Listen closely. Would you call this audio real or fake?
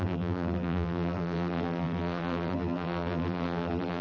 fake